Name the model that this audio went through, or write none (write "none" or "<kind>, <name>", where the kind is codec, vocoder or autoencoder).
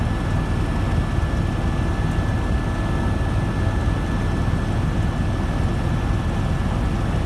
none